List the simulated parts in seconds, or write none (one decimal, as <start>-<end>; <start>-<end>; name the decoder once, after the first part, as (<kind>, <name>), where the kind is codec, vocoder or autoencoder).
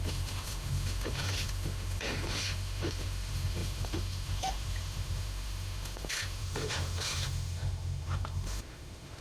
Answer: 0.0-9.2 (autoencoder, DAC-VAE)